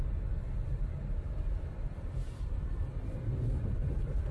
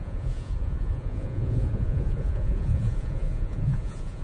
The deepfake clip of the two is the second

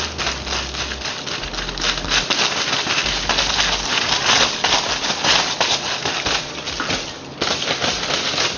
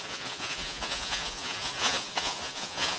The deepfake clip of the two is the second